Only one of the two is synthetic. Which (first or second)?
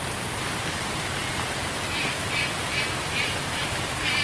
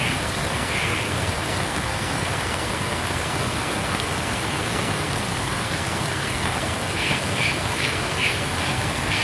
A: second